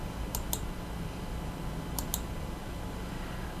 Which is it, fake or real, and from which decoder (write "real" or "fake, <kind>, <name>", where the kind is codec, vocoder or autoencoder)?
real